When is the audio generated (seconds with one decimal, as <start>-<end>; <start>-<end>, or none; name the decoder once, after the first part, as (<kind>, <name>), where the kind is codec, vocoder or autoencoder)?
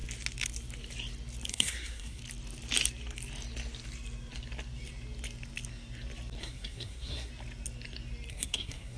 1.5-2.2 (codec, SNAC); 6.4-7.3; 8.3-9.0